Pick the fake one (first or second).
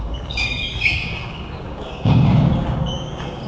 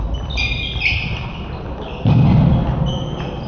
first